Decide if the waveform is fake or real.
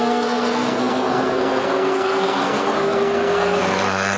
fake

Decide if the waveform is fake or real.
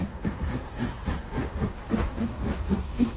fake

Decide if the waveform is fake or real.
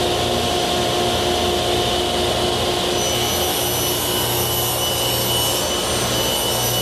real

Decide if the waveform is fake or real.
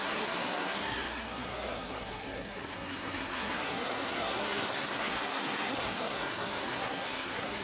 fake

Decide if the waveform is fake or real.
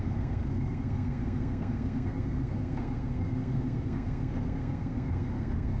fake